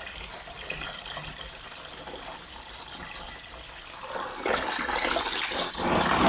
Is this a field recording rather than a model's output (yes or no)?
yes